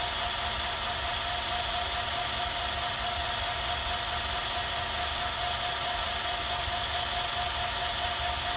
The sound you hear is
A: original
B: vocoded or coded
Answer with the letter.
A